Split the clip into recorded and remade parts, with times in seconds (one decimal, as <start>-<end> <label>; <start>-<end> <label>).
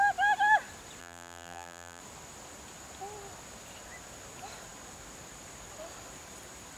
0.0-1.0 recorded; 1.0-2.0 remade; 2.0-6.8 recorded